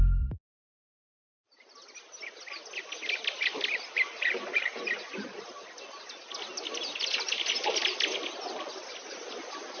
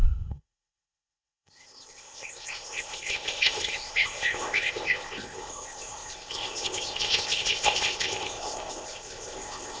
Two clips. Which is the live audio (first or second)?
first